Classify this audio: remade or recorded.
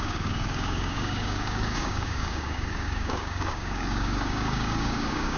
remade